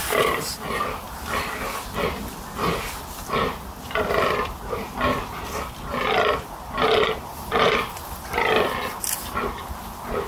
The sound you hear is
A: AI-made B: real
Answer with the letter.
B